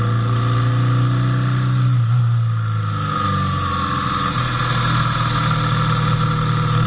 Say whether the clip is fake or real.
real